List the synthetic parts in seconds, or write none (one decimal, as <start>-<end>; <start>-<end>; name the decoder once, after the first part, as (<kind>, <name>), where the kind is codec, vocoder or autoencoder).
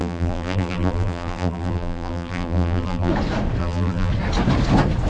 0.0-3.1 (vocoder, BigVGAN v2); 3.6-4.1